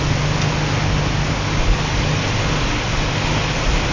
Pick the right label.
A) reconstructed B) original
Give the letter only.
B